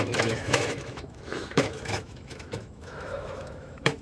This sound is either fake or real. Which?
fake